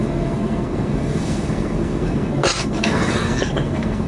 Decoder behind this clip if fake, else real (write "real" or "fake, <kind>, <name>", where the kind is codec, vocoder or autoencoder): fake, codec, SNAC